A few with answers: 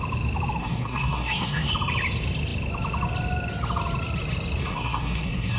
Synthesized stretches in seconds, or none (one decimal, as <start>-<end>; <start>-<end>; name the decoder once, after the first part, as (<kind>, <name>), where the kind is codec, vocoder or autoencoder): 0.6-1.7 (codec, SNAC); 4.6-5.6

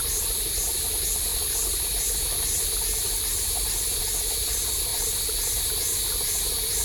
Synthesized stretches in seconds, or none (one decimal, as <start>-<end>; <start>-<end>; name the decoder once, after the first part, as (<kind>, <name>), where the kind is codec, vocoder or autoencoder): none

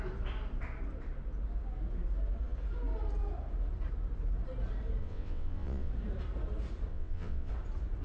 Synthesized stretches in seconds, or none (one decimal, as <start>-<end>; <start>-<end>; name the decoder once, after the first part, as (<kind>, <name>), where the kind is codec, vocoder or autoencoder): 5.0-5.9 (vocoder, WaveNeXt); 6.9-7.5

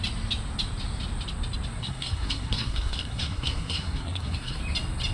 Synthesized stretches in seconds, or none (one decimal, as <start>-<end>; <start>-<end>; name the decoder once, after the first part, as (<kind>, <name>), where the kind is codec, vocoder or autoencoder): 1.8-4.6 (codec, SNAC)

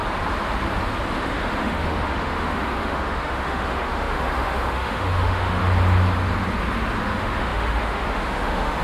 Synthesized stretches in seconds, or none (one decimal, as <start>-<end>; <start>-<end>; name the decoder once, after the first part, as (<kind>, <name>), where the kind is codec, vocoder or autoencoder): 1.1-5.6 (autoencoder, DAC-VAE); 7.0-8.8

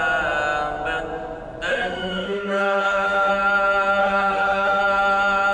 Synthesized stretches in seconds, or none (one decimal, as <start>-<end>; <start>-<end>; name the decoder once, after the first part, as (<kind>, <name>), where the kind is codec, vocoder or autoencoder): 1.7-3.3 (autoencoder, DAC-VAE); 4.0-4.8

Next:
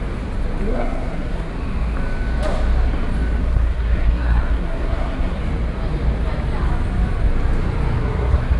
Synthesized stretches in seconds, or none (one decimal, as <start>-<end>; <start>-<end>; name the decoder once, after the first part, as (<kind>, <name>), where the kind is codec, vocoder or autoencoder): 0.7-1.5 (codec, SNAC); 3.4-5.4; 8.0-8.6

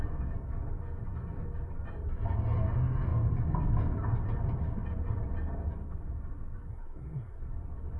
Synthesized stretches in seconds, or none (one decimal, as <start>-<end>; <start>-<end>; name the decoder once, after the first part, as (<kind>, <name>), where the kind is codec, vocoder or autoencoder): 6.7-7.4 (codec, SNAC)